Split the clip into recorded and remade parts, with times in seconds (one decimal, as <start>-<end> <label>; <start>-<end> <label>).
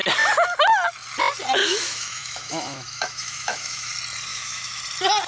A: 0.0-1.6 recorded; 1.6-3.9 remade; 3.9-4.3 recorded; 4.3-4.8 remade; 4.8-5.3 recorded